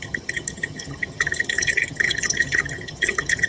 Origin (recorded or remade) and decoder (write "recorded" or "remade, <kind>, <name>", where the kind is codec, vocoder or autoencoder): remade, vocoder, HiFi-GAN